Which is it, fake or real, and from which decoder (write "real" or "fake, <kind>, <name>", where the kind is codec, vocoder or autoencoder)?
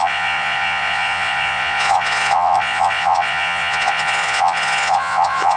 fake, vocoder, Vocos